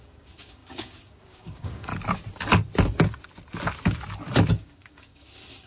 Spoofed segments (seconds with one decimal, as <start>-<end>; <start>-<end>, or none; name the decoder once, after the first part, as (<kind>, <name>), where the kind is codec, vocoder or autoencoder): 0.0-1.9 (codec, DAC); 4.5-5.7